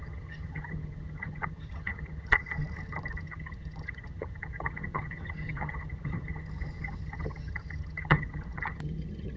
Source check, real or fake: fake